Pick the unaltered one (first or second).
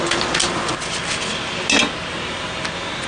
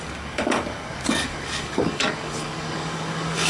first